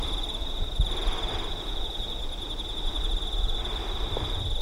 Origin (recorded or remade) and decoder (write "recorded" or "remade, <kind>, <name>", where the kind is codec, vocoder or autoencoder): remade, vocoder, BigVGAN v2